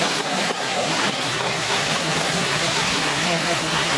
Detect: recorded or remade remade